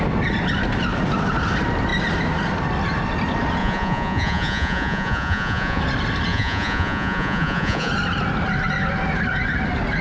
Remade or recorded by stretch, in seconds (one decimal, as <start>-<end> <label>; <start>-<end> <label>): 0.0-3.6 recorded; 3.6-5.8 remade; 5.8-6.3 recorded; 6.3-7.9 remade; 7.9-10.0 recorded